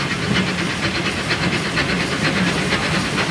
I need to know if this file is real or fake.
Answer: real